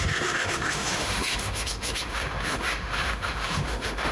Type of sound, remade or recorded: remade